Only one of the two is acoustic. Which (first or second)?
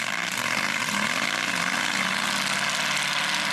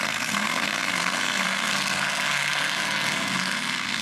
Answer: first